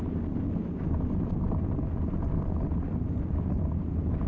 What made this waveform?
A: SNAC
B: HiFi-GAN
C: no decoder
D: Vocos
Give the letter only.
C